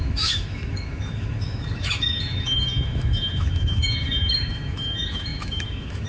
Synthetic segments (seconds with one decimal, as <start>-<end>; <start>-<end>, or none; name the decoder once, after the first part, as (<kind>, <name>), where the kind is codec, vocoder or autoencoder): 0.0-6.1 (autoencoder, DAC-VAE)